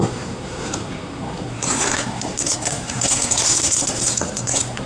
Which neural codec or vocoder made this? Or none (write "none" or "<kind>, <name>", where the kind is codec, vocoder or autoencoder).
codec, SNAC